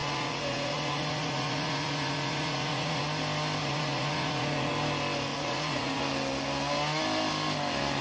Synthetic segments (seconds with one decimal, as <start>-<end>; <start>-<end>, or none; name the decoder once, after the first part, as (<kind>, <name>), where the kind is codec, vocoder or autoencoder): 0.0-3.0 (vocoder, Vocos); 3.6-4.7; 5.3-6.0